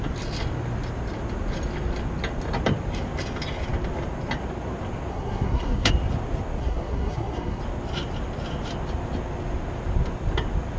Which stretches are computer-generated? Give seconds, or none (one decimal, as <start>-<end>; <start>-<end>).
5.1-5.9; 6.6-7.6